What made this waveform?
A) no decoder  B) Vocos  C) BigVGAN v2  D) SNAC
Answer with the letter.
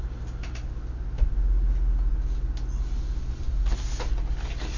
A